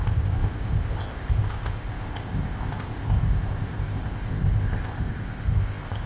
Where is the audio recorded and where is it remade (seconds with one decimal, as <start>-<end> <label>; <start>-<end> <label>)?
0.0-6.1 remade